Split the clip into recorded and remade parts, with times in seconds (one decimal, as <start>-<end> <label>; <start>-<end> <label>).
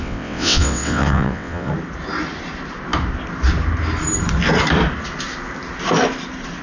0.0-1.7 remade; 1.7-6.6 recorded